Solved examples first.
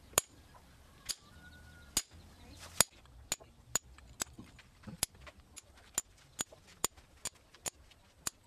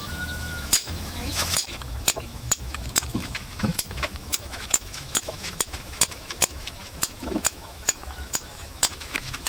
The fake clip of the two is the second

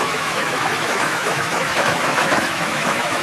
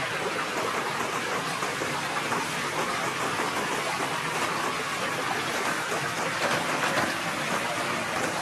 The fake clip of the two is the first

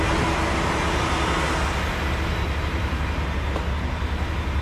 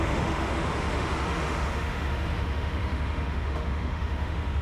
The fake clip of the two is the second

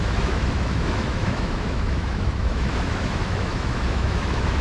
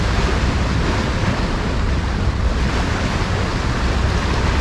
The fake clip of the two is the first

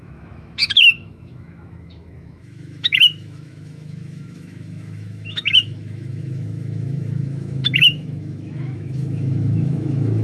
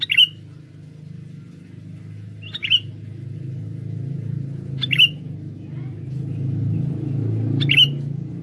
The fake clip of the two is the first